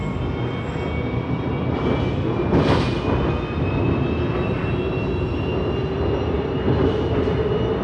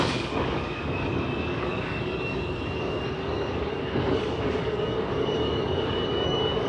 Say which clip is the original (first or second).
first